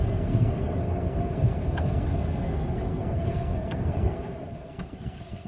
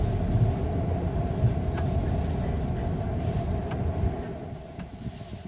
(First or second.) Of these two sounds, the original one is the second